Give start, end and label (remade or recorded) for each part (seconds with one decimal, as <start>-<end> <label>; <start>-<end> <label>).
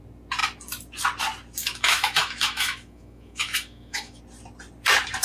0.0-1.6 recorded; 1.6-4.2 remade; 4.2-5.2 recorded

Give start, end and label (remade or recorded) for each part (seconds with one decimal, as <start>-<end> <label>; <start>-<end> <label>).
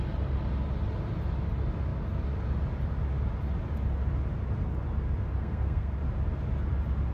0.0-5.4 recorded; 5.4-6.0 remade; 6.0-7.1 recorded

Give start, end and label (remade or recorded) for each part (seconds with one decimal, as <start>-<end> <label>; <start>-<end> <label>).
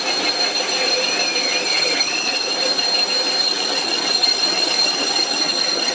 0.0-1.7 recorded; 1.7-2.5 remade; 2.5-3.4 recorded; 3.4-5.9 remade